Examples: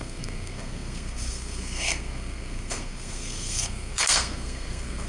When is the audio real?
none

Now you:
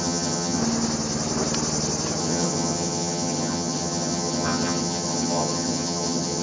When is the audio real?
0.6-2.2

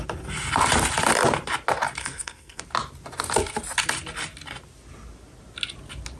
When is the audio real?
0.0-2.0; 2.6-6.2

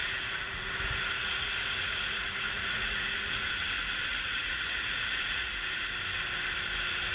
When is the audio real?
0.7-1.2; 3.5-4.1; 5.9-7.1

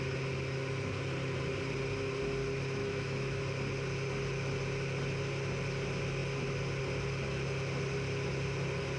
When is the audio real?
0.0-2.8; 3.4-9.0

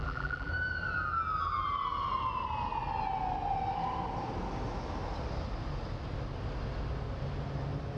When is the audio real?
0.5-8.0